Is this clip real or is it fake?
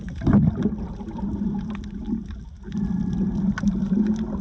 real